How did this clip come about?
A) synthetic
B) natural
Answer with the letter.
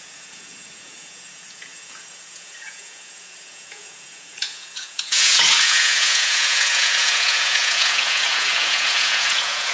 A